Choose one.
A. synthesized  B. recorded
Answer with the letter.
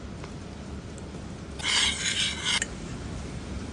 B